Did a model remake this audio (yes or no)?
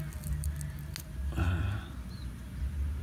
no